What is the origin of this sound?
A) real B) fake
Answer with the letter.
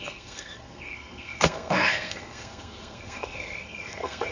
B